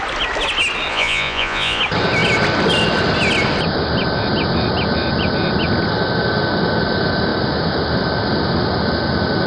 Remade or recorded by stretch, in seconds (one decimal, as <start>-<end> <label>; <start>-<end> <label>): 0.0-0.9 recorded; 0.9-1.8 remade; 1.8-9.5 recorded